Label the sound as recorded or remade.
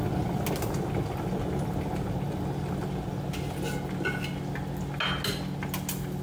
recorded